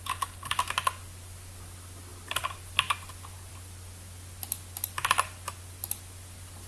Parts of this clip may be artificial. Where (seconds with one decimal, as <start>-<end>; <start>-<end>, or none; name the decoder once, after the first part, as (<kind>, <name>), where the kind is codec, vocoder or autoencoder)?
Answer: none